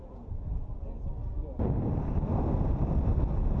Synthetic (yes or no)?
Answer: no